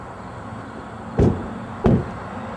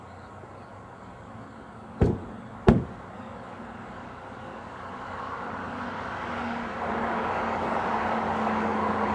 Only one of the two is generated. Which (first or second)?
second